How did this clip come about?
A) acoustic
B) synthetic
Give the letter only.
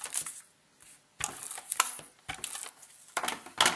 A